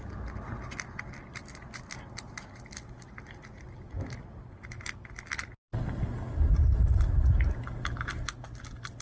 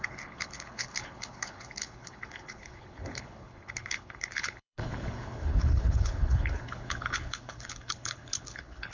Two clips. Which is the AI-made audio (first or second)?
second